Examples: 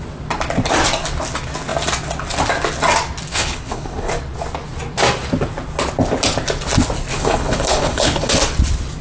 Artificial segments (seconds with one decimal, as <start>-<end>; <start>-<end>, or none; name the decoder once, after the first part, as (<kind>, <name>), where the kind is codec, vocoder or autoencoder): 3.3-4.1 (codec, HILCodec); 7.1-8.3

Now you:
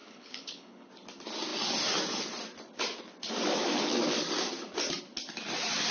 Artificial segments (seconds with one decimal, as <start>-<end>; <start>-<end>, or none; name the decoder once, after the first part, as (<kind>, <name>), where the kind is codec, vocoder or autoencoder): 0.0-0.9 (codec, HILCodec)

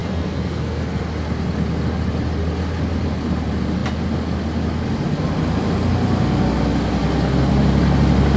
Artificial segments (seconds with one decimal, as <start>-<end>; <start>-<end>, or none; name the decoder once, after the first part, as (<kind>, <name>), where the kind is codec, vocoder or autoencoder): 0.0-1.0 (codec, SNAC)

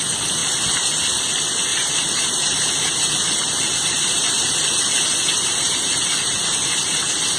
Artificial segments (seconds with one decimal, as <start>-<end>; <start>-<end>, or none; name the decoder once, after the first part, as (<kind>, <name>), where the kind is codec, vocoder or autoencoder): 1.7-6.1 (vocoder, BigVGAN v2)

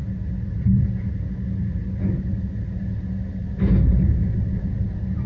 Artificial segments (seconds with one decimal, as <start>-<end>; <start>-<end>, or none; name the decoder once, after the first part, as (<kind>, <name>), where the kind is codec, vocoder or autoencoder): none